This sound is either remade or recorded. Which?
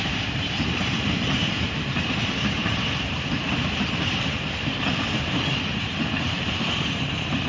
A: remade